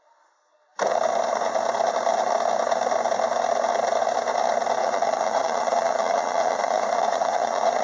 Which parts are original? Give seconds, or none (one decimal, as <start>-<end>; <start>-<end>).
0.0-4.8